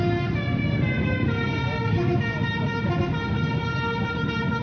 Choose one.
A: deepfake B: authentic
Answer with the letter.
B